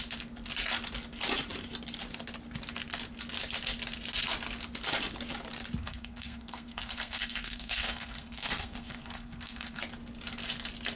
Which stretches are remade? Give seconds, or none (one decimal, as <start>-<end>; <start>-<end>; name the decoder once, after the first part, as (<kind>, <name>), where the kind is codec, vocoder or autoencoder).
5.8-9.8 (codec, SNAC)